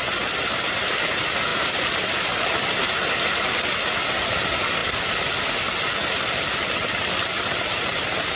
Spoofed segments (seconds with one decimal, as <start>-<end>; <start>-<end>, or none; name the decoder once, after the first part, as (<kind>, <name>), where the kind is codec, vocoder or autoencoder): 1.5-2.7 (vocoder, BigVGAN v2); 4.8-5.3

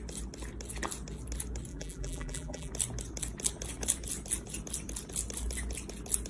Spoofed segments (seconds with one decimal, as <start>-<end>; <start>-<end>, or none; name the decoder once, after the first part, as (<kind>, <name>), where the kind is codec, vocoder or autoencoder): 1.7-2.7 (vocoder, BigVGAN v2)

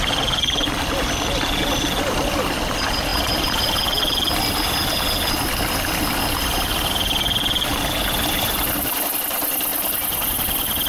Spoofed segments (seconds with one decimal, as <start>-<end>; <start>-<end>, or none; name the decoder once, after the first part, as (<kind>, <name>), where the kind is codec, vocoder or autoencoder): none

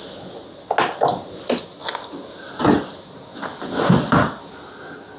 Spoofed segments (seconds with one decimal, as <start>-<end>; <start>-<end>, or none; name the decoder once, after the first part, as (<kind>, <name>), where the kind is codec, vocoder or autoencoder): none

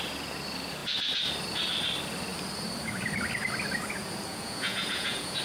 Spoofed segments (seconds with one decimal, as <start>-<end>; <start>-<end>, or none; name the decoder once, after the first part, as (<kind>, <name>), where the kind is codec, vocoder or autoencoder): 4.3-5.4 (vocoder, Vocos)